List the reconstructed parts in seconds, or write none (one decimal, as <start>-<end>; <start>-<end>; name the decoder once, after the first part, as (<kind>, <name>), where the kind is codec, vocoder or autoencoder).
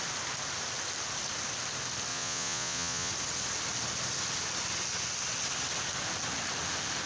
2.1-3.1 (vocoder, Vocos)